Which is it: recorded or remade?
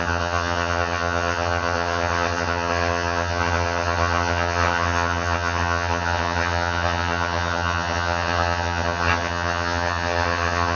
remade